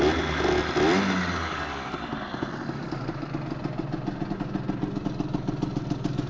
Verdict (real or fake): real